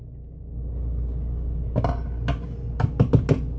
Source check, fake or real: real